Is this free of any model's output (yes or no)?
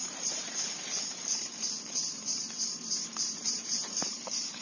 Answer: no